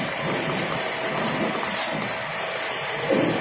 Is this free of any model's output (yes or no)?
yes